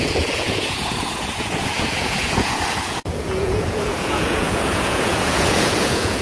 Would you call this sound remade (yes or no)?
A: yes